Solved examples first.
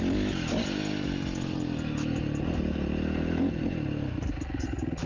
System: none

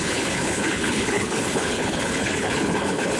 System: codec, HILCodec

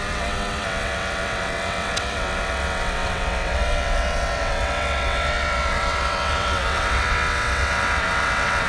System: vocoder, WaveNeXt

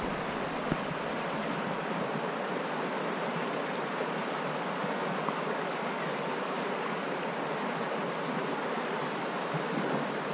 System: none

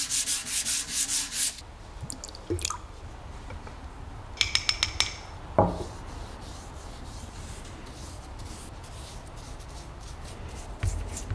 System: none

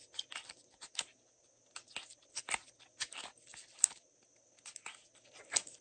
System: none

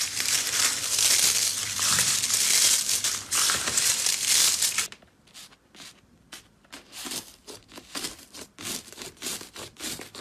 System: vocoder, BigVGAN v2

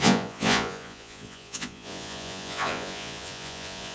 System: vocoder, Vocos